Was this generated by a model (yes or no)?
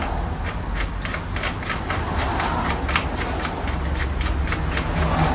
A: no